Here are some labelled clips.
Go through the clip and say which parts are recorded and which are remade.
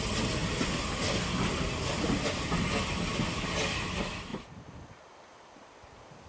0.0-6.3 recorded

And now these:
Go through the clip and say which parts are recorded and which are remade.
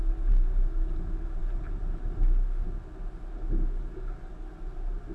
0.0-5.1 recorded